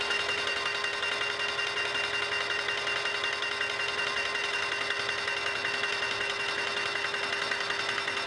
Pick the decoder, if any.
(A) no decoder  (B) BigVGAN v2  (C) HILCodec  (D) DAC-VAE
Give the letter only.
A